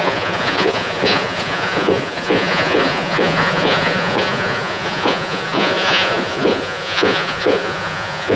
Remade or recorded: remade